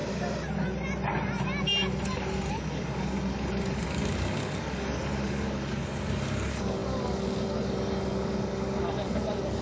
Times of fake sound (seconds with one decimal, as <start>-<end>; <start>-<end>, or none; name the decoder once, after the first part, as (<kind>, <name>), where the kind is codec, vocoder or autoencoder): 2.5-9.6 (codec, DAC)